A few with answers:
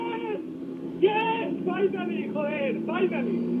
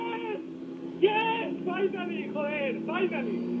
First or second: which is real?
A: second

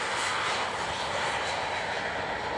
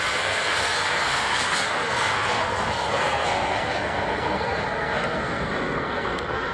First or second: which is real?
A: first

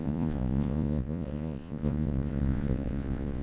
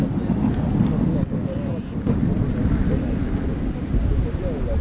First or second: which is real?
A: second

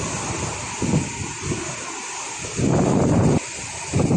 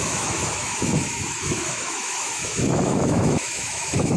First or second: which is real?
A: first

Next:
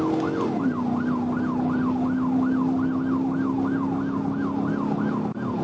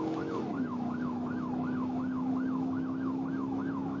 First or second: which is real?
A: first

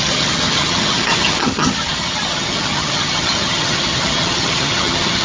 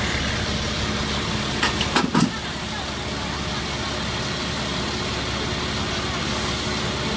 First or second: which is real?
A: second